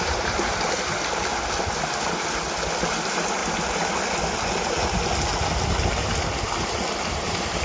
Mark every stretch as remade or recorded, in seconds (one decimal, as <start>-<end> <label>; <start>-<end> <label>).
0.0-1.3 remade; 1.3-2.9 recorded; 2.9-3.4 remade; 3.4-7.0 recorded; 7.0-7.6 remade